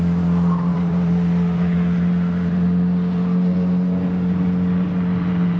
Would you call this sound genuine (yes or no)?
yes